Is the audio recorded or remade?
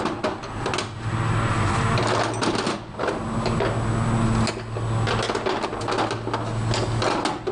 recorded